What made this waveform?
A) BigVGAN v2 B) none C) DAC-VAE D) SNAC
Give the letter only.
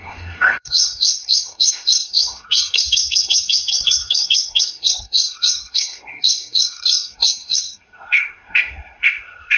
D